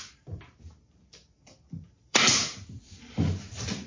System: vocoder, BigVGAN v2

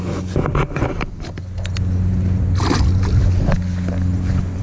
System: none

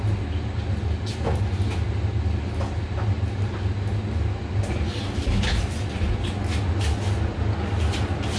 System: none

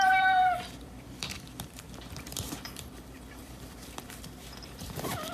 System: vocoder, BigVGAN v2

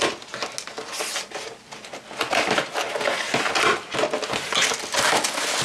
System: none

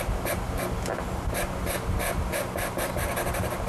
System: none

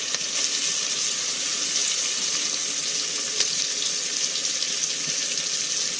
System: none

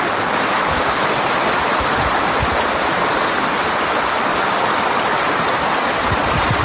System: vocoder, BigVGAN v2